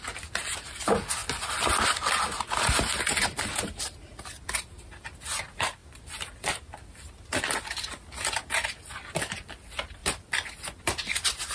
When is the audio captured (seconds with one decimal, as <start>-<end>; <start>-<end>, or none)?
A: 0.0-11.5